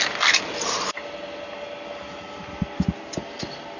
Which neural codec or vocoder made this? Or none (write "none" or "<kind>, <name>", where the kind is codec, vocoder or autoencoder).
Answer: none